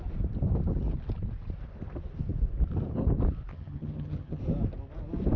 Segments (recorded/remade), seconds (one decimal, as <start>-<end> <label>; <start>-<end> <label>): 0.0-3.5 recorded; 3.5-4.4 remade; 4.4-5.4 recorded